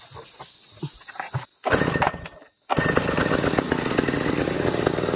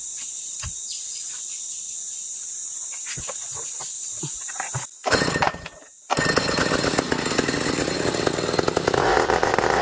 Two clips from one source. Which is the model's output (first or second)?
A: second